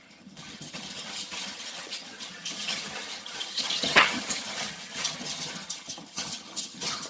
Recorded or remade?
remade